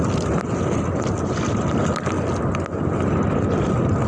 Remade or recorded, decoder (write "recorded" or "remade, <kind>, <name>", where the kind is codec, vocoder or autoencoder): recorded